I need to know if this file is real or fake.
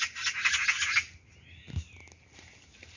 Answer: real